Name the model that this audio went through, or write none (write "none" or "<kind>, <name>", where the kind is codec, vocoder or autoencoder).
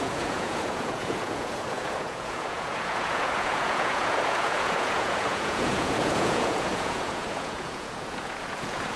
vocoder, Vocos